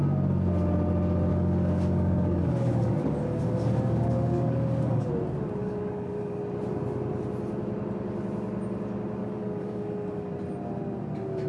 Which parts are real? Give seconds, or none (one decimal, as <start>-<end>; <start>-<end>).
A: 0.0-1.3; 5.1-5.6; 6.4-9.2; 10.3-11.5